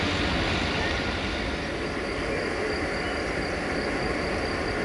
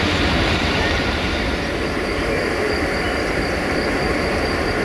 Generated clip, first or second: second